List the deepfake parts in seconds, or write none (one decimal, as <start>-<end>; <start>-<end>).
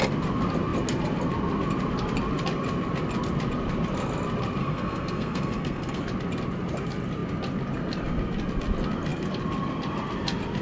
4.6-6.0